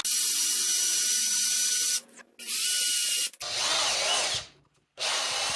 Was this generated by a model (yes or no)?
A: no